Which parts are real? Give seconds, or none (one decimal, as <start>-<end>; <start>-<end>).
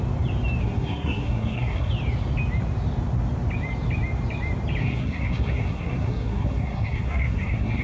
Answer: 0.0-0.6; 1.9-4.8